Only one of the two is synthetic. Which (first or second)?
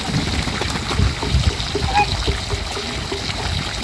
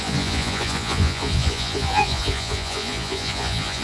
second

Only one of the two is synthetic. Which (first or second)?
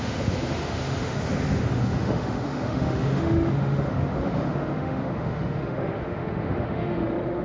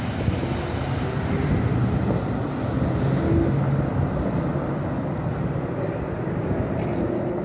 first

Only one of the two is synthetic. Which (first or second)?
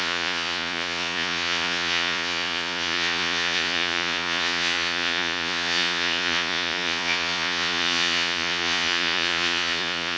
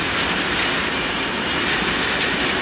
first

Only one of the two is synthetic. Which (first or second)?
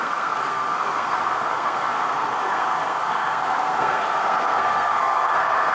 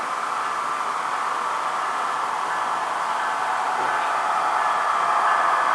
first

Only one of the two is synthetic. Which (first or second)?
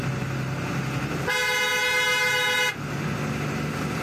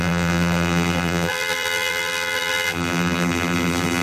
second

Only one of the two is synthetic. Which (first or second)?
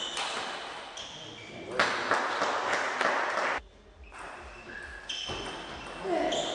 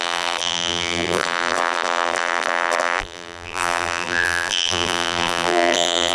second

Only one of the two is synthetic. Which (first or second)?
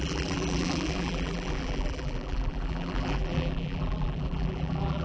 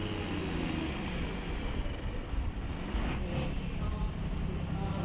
first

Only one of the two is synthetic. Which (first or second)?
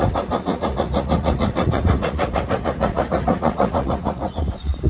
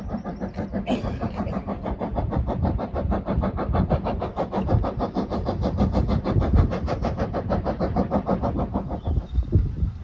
first